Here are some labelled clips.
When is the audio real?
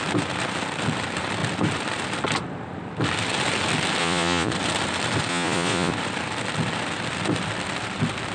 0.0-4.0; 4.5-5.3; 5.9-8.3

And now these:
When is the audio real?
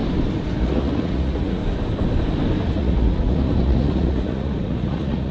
0.0-0.6; 1.6-2.7